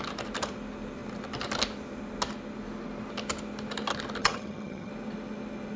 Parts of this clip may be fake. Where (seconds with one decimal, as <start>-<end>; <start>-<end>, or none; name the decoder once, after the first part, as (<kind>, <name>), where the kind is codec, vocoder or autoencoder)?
4.2-4.9 (vocoder, HiFi-GAN)